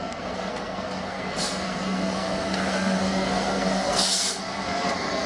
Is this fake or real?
fake